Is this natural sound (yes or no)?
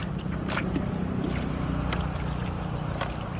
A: yes